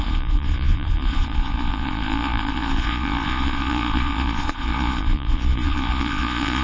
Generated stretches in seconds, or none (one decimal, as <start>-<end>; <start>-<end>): 0.0-6.6